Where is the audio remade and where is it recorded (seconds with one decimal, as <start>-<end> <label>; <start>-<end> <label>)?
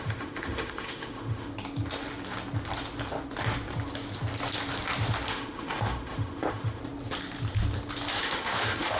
0.0-1.5 remade; 1.5-5.3 recorded; 5.3-6.8 remade; 6.8-8.2 recorded; 8.2-9.0 remade